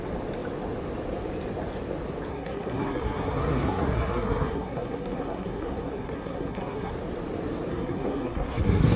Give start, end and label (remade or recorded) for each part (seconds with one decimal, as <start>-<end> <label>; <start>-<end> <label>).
0.0-2.3 recorded; 2.3-6.9 remade; 6.9-7.7 recorded; 7.7-9.0 remade